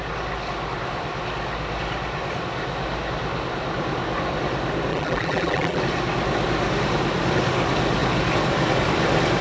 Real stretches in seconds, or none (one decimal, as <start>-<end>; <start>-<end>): 0.0-4.9; 5.8-9.4